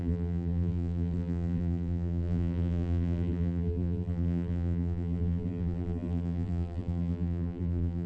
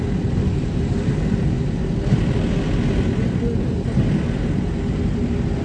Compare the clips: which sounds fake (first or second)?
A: first